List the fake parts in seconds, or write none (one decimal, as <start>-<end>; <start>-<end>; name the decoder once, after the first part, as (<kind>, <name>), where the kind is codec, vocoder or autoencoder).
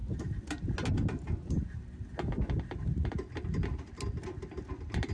none